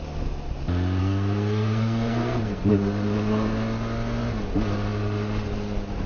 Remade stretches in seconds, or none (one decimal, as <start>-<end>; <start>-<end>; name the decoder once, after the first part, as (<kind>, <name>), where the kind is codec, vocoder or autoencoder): 1.0-2.7 (codec, SNAC)